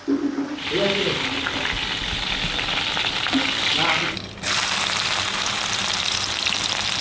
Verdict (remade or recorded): recorded